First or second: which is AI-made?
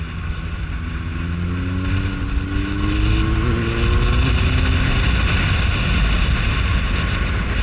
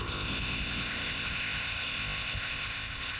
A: second